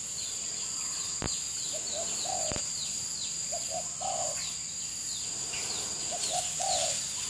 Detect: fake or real real